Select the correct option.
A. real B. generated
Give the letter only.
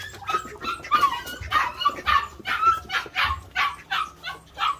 A